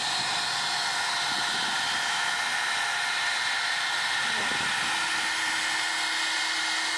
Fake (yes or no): no